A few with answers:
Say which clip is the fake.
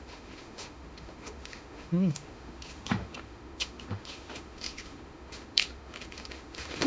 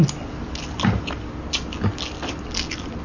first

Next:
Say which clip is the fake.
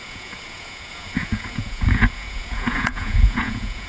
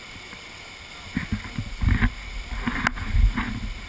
first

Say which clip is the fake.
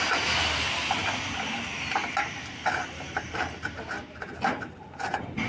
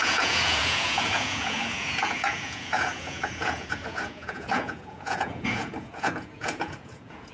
second